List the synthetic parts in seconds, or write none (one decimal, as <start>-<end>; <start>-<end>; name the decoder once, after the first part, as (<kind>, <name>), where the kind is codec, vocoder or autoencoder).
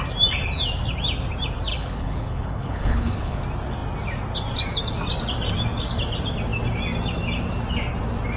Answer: 1.7-3.4 (codec, HILCodec)